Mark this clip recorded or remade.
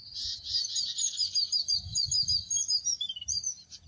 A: remade